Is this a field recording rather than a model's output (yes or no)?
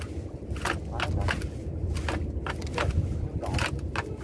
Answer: yes